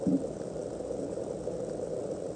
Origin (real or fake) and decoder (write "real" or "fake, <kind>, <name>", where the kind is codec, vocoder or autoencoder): real